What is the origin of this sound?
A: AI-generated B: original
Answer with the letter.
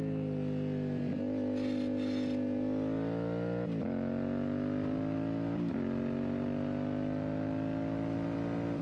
B